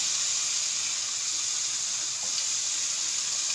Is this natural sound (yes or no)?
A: yes